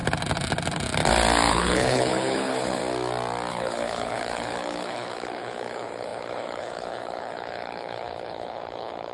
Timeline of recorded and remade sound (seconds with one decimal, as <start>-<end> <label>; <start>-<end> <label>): 0.0-1.5 recorded; 1.5-2.8 remade; 2.8-3.5 recorded; 3.5-9.1 remade